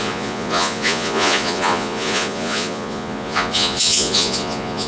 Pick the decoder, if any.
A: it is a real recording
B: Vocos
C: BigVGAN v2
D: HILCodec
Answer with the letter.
B